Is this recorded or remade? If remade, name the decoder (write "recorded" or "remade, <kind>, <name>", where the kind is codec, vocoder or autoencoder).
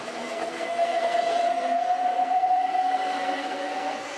remade, codec, SNAC